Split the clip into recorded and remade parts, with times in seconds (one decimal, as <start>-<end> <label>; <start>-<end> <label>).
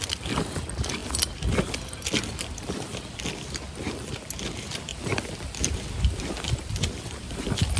0.0-7.8 remade